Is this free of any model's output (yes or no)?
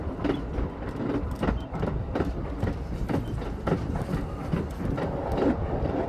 yes